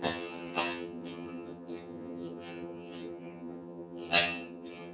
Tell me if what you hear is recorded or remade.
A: remade